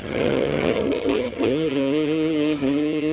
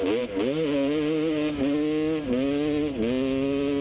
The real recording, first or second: second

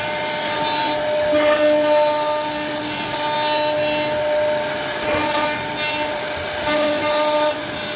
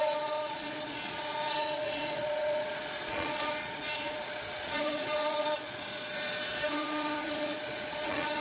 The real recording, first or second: first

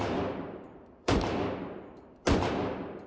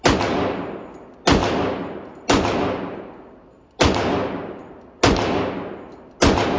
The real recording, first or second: second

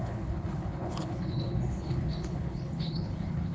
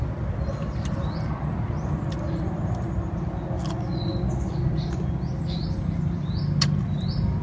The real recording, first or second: second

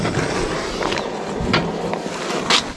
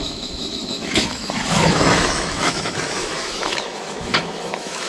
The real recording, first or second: first